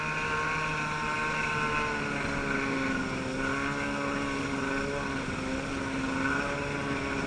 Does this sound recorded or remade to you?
recorded